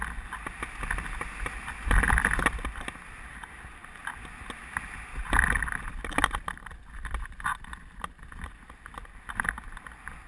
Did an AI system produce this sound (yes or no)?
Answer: no